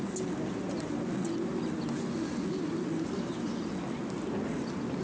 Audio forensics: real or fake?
real